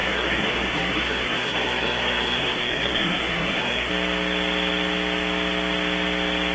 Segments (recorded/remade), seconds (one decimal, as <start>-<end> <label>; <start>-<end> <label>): 0.0-3.9 remade; 3.9-6.5 recorded